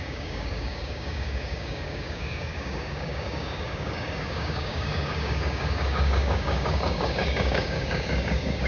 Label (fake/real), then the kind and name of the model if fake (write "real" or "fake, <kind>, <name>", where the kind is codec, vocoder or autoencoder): fake, codec, DAC